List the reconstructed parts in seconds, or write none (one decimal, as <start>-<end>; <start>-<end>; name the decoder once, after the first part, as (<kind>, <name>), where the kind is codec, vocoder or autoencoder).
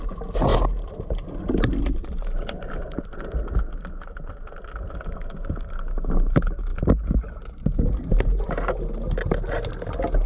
0.5-4.9 (vocoder, BigVGAN v2)